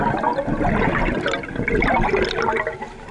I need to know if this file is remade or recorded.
recorded